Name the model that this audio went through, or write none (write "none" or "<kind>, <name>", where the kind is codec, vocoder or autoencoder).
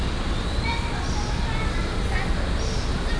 none